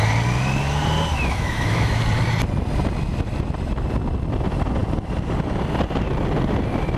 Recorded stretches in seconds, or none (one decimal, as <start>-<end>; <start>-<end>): 0.0-1.1; 2.0-7.0